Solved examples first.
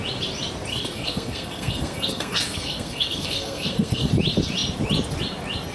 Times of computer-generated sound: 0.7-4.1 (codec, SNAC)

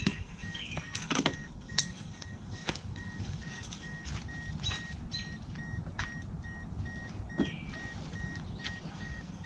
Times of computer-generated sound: 0.0-4.1 (codec, SNAC); 8.9-9.5

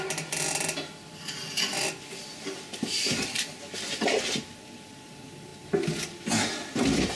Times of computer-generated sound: none

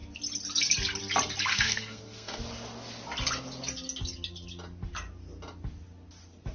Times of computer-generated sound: 1.5-2.4 (codec, SNAC)

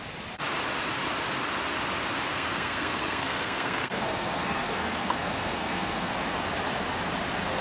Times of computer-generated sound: 2.3-6.1 (codec, SNAC)

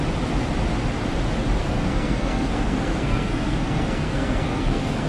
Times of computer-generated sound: 1.6-5.1 (codec, SNAC)

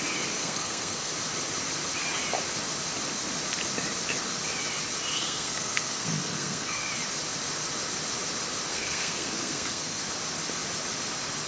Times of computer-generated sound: 0.4-1.1 (codec, SNAC); 5.1-6.9; 8.7-10.0

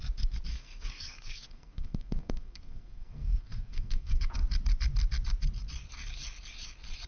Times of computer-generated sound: 0.5-4.2 (codec, SNAC)